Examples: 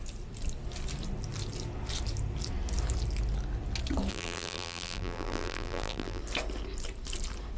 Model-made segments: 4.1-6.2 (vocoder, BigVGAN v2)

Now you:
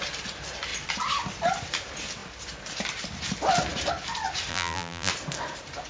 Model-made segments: 4.5-5.1 (vocoder, BigVGAN v2)